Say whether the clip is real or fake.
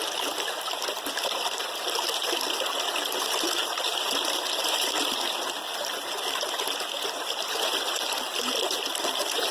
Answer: real